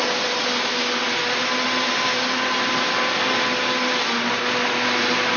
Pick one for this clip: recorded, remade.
recorded